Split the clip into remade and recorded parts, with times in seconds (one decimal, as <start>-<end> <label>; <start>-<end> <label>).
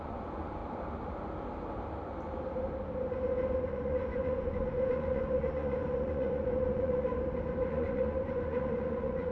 0.0-0.6 remade; 0.6-3.7 recorded; 3.7-7.1 remade; 7.1-7.7 recorded; 7.7-9.3 remade